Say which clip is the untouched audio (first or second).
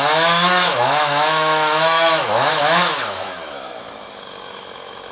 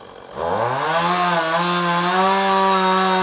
second